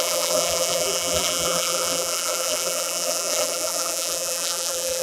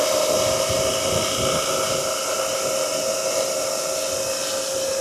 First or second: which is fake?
first